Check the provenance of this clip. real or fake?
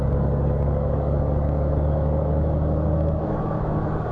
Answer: fake